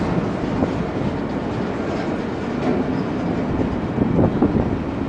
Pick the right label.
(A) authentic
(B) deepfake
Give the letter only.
A